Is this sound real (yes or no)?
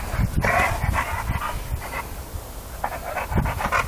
yes